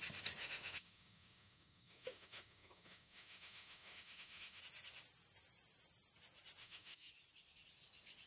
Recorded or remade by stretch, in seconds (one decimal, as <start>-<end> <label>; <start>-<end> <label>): 0.0-0.4 recorded; 0.4-4.6 remade; 4.6-6.6 recorded; 6.6-7.1 remade; 7.1-8.3 recorded